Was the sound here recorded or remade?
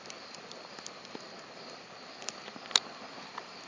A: recorded